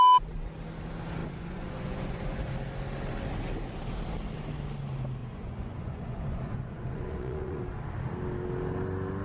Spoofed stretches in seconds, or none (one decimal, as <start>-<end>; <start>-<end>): 1.2-2.5; 5.2-7.8